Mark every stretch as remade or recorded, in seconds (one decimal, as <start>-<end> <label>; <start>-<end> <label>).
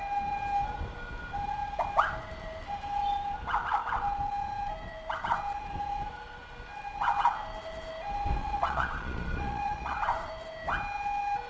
0.0-8.4 recorded; 8.4-10.3 remade; 10.3-11.5 recorded